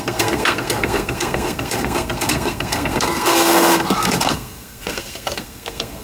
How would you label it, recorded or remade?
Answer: remade